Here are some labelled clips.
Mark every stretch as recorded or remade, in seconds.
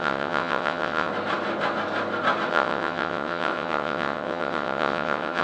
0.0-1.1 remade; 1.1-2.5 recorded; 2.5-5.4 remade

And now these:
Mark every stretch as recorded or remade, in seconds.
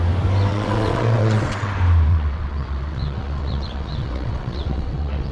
0.0-0.5 recorded; 0.5-1.7 remade; 1.7-2.1 recorded; 2.1-5.3 remade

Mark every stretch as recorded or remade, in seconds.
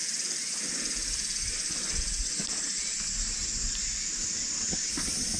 0.0-5.4 recorded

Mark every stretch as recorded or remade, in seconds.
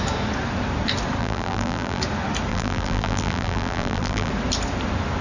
0.0-1.2 recorded; 1.2-2.0 remade; 2.0-2.5 recorded; 2.5-4.3 remade; 4.3-5.2 recorded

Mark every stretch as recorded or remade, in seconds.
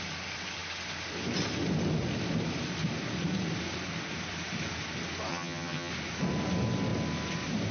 0.0-5.3 recorded; 5.3-5.9 remade; 5.9-7.7 recorded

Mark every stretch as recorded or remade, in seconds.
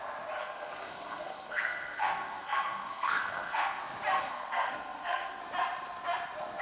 0.0-0.4 recorded; 0.4-3.8 remade; 3.8-4.2 recorded; 4.2-5.4 remade; 5.4-6.6 recorded